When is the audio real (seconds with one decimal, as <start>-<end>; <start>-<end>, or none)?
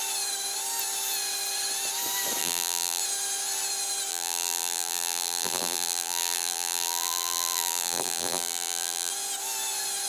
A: 0.0-2.4; 3.0-4.1; 9.1-10.1